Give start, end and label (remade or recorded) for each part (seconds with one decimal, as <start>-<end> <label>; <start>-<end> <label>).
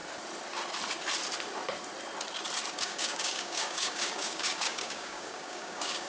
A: 0.0-2.7 recorded; 2.7-6.1 remade